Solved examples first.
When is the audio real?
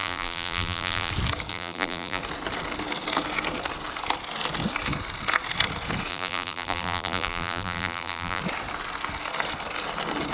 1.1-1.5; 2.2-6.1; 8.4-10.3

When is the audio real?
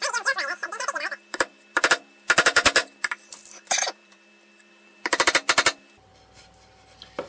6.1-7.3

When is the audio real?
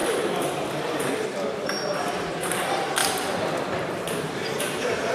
3.0-3.9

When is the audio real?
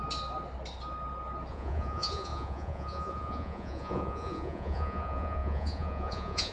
0.0-1.5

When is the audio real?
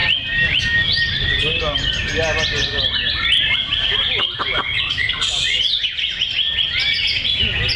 0.6-7.8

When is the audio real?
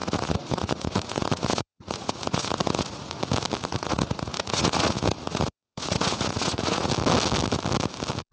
3.2-3.7; 6.9-8.3